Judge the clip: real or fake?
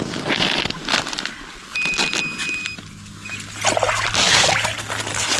real